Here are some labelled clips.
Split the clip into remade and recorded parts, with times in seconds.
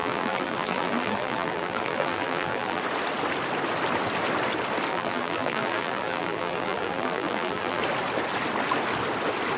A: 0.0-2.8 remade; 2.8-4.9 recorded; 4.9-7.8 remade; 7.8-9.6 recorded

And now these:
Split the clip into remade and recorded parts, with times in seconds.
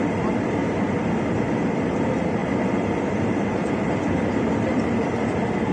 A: 0.0-0.6 remade; 0.6-1.5 recorded; 1.5-5.7 remade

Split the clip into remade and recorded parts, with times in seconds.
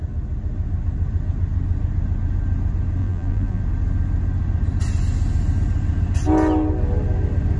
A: 0.0-3.0 recorded; 3.0-3.6 remade; 3.6-7.6 recorded